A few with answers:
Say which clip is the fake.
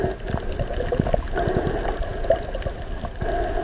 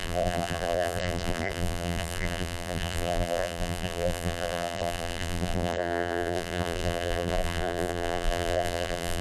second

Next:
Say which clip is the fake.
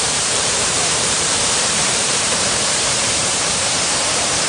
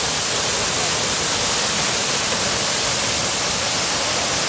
first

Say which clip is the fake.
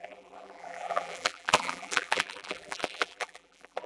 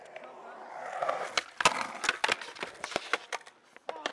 first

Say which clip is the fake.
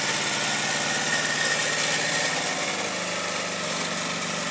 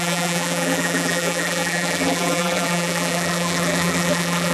second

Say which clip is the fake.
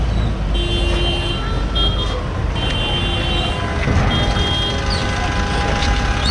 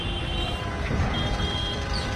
second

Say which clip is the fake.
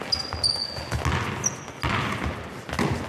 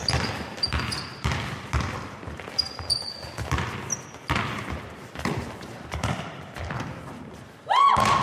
second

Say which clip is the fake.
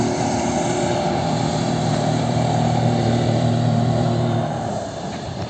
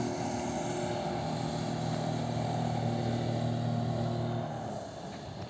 first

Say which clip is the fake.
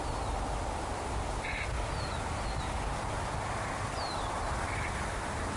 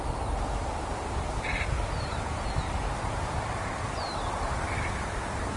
second